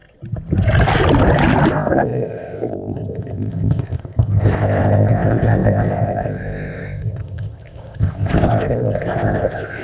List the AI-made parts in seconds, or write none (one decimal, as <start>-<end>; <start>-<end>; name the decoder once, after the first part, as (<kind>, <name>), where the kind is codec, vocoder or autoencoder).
1.7-9.8 (codec, ZipCodec)